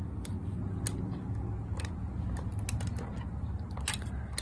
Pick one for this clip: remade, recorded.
recorded